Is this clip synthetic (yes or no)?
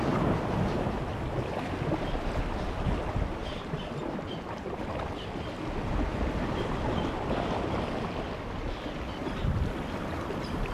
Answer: no